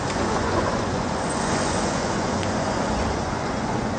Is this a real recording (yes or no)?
no